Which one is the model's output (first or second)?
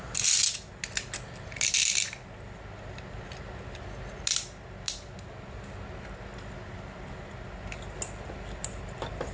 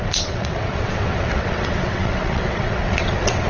second